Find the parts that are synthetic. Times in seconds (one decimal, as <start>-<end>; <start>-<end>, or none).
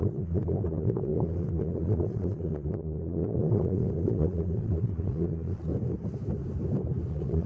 0.0-5.7; 7.1-7.5